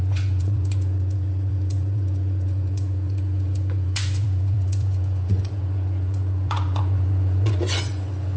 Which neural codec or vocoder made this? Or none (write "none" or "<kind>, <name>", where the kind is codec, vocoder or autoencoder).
vocoder, Vocos